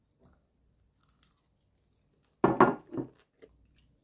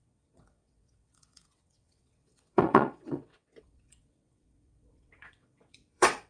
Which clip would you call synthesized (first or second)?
second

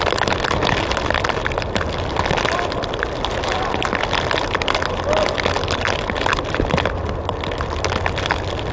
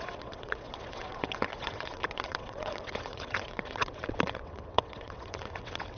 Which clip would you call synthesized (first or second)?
second